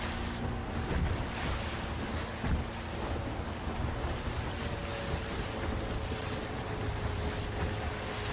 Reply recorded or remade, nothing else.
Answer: recorded